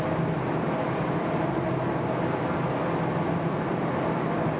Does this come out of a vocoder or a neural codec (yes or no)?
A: no